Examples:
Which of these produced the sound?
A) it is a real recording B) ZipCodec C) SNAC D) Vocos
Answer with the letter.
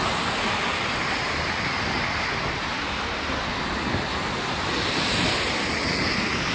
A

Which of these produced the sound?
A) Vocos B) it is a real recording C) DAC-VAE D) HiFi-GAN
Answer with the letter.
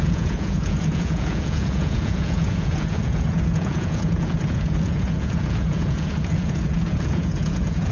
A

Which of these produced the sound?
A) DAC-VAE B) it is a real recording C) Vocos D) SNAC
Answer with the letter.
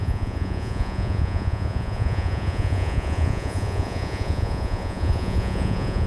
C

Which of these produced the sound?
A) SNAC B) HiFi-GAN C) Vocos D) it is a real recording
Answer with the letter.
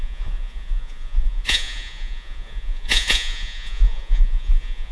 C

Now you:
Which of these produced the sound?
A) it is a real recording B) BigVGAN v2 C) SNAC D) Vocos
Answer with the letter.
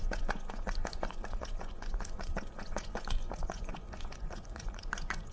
D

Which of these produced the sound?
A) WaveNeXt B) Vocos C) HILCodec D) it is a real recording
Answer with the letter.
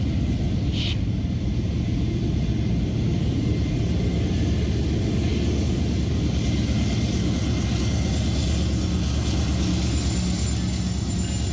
D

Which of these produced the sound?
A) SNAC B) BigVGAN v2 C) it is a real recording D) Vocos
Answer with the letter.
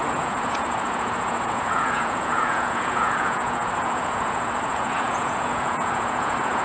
D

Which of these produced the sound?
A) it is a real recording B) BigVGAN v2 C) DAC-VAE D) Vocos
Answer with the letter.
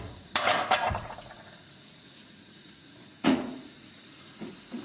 D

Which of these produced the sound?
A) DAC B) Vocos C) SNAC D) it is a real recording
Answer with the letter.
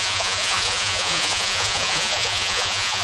B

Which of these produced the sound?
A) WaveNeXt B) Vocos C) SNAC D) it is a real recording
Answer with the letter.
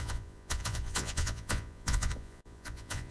B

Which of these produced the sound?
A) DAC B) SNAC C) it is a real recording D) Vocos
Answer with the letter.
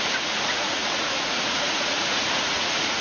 D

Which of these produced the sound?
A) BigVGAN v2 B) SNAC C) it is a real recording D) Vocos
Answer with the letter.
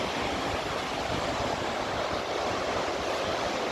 C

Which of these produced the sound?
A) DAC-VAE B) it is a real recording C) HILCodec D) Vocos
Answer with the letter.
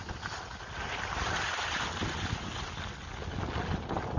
B